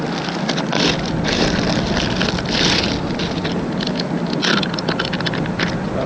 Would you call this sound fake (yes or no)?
no